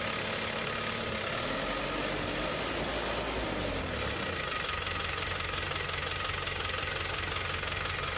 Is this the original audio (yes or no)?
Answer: yes